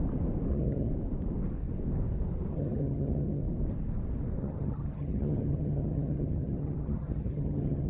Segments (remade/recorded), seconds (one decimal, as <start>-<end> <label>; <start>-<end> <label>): 0.0-0.5 recorded; 0.5-0.9 remade; 0.9-2.5 recorded; 2.5-3.4 remade; 3.4-4.4 recorded; 4.4-7.9 remade